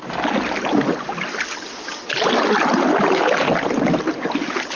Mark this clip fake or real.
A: real